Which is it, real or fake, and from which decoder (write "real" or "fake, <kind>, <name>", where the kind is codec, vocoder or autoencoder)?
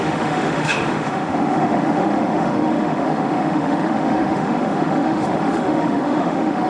fake, autoencoder, DAC-VAE